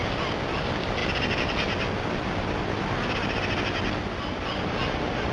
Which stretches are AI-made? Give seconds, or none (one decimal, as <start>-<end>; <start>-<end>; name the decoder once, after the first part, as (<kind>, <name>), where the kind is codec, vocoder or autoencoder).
none